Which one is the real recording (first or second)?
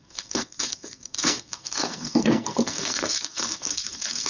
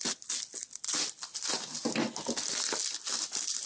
second